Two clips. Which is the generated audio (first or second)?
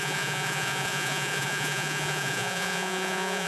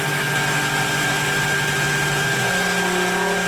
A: first